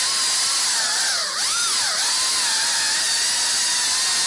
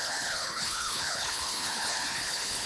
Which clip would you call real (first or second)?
first